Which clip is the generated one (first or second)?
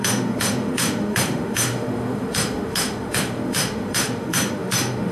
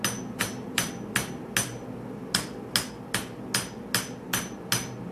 first